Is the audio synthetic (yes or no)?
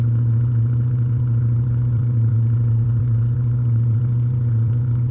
yes